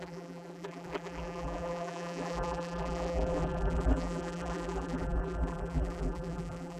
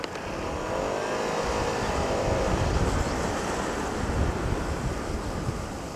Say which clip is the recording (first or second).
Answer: second